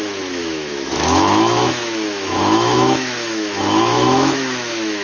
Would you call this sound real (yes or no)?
no